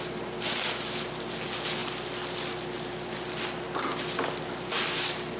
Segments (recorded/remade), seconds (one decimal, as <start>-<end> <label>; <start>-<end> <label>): 0.0-5.4 recorded